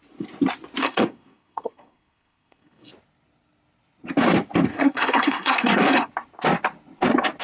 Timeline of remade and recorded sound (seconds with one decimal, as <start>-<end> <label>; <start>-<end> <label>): 0.0-0.8 recorded; 0.8-2.9 remade; 2.9-4.7 recorded; 4.7-6.1 remade; 6.1-7.4 recorded